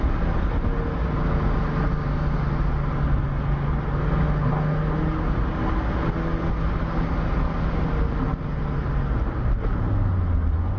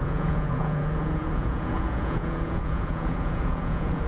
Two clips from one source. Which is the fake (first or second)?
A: second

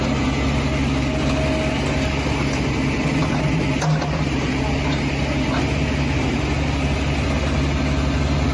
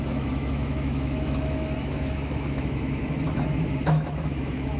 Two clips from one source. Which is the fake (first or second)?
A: second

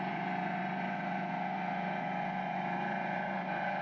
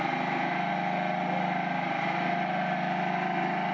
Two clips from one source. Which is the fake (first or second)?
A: first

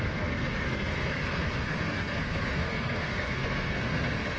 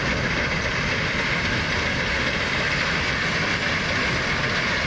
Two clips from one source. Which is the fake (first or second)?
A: first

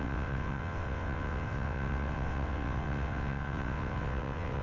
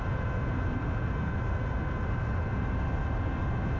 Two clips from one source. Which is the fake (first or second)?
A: first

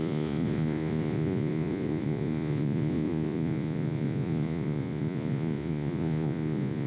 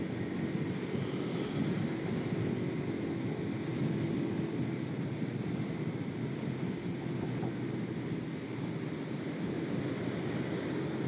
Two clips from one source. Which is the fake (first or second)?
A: first